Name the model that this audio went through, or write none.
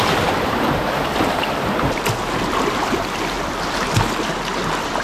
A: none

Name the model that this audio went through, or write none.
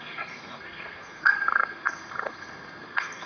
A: codec, SNAC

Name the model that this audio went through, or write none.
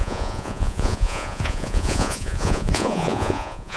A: vocoder, Vocos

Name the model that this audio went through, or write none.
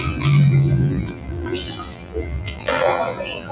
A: vocoder, BigVGAN v2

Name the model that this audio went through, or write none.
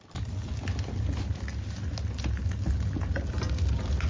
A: none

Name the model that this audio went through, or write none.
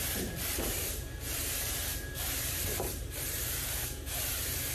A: vocoder, BigVGAN v2